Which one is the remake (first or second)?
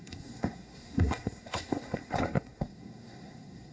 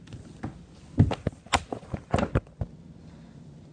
first